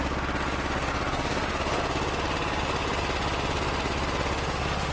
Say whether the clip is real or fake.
real